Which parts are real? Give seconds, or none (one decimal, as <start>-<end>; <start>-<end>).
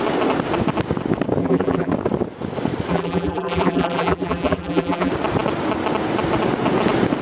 0.0-1.4; 1.9-2.9; 5.1-7.2